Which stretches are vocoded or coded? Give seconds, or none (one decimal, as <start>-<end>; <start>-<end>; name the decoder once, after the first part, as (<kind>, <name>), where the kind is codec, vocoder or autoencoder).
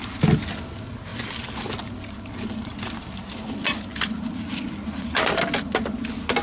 none